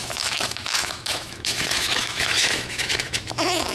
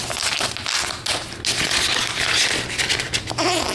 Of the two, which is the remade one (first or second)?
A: first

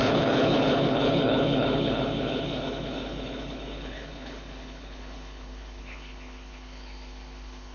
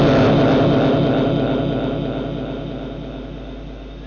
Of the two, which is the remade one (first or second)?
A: first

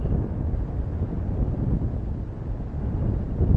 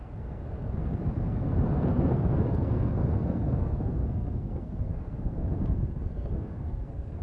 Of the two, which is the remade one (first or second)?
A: second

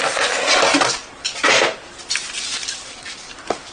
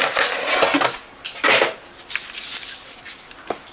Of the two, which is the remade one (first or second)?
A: first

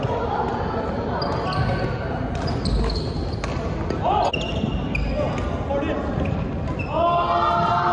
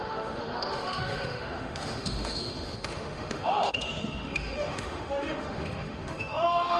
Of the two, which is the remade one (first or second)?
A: second